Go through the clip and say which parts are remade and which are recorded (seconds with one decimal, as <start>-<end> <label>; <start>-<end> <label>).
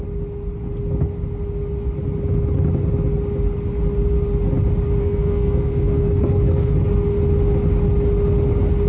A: 0.0-5.0 recorded; 5.0-6.7 remade; 6.7-8.9 recorded